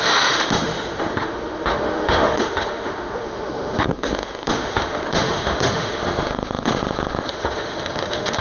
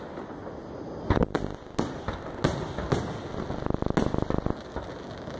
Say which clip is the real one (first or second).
second